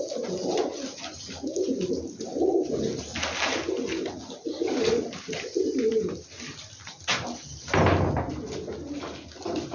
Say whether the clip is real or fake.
real